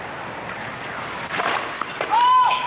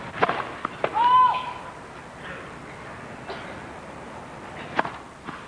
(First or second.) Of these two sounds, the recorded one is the second